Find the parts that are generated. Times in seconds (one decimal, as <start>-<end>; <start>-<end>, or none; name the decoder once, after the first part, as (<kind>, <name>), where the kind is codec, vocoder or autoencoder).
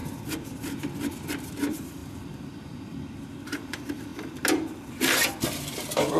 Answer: 1.1-2.0 (vocoder, BigVGAN v2); 2.5-4.1; 4.9-6.2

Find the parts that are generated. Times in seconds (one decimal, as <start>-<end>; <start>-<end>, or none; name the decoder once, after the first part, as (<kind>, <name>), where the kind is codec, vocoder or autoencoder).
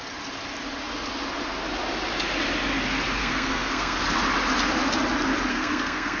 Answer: 3.2-4.0 (codec, SNAC); 5.5-6.2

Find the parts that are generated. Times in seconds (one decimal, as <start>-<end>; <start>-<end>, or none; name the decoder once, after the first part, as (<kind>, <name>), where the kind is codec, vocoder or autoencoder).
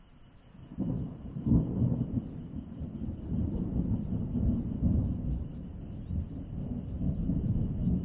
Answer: none